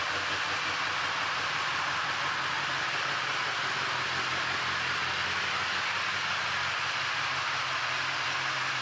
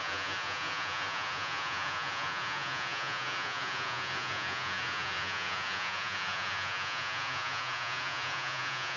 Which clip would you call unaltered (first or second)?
first